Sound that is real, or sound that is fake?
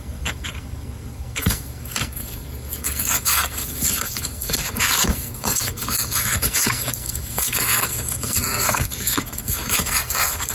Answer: fake